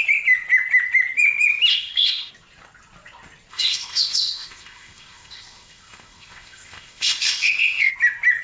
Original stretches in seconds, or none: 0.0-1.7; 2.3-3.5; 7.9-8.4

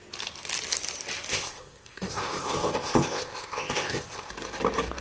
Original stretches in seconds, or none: 0.0-1.3; 4.3-5.0

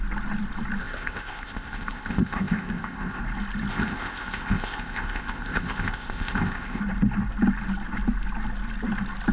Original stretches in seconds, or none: 0.0-0.8; 3.2-3.7; 6.8-9.3

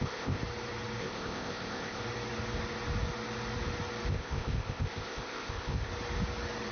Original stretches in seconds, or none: 0.4-1.0; 2.0-4.1; 5.9-6.7

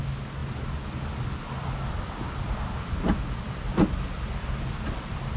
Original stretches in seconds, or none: 0.0-5.4

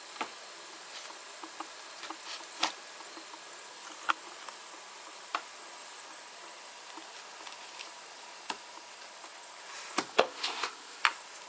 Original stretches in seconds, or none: 0.0-10.1; 11.0-11.5